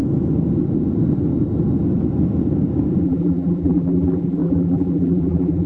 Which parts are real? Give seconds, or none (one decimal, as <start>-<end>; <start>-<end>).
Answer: 0.0-3.0